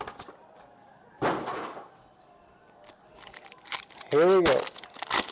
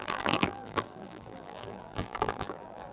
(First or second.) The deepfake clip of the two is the second